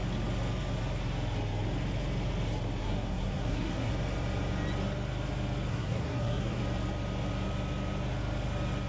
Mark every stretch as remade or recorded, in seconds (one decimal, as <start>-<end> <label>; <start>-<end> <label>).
0.0-2.8 recorded; 2.8-3.9 remade; 3.9-5.7 recorded; 5.7-6.6 remade; 6.6-8.9 recorded